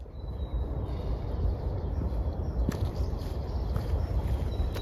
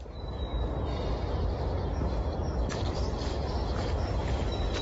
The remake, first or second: first